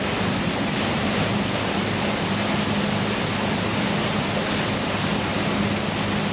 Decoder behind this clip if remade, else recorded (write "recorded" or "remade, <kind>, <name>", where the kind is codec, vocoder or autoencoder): recorded